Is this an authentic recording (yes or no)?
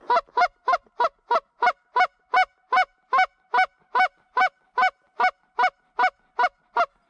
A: yes